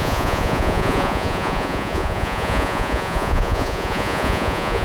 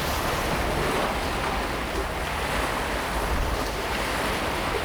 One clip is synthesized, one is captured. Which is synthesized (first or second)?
first